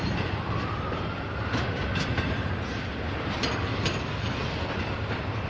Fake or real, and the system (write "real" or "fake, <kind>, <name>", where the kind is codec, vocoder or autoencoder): fake, vocoder, BigVGAN v2